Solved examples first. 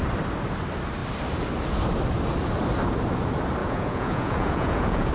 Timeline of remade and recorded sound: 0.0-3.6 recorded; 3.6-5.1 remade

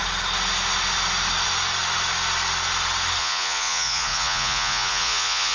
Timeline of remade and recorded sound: 0.0-3.2 recorded; 3.2-5.5 remade

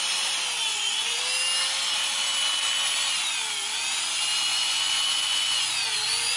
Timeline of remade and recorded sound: 0.0-0.7 recorded; 0.7-1.2 remade; 1.2-4.5 recorded; 4.5-6.4 remade